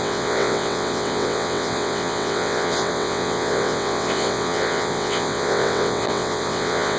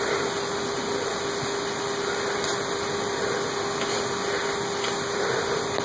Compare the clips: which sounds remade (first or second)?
first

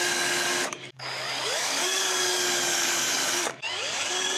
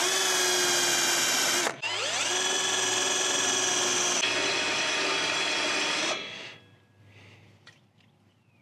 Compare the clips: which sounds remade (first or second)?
first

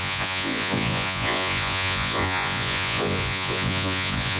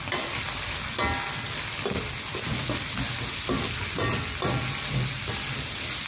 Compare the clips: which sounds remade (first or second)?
first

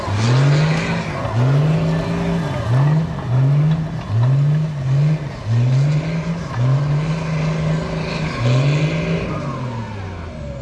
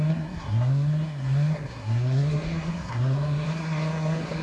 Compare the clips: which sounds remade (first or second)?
second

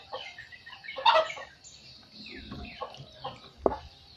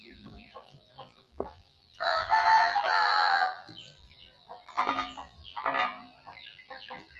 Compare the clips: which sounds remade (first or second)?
second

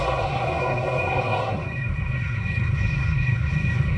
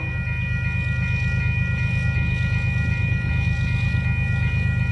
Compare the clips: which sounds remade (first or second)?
first